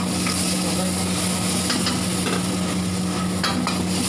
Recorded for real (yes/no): yes